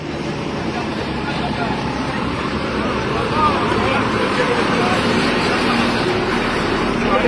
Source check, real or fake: fake